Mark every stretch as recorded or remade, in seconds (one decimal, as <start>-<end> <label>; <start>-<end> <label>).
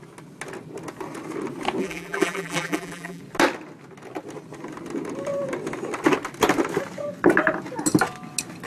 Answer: 0.0-1.8 recorded; 1.8-3.2 remade; 3.2-8.7 recorded